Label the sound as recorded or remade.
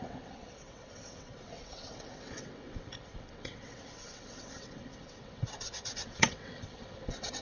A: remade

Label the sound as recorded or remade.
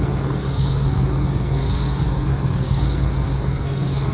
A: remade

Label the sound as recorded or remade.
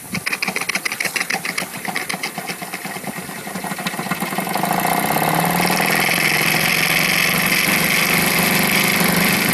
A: recorded